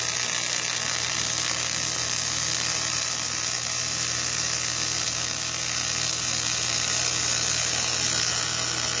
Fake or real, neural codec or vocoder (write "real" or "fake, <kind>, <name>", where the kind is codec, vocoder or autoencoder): real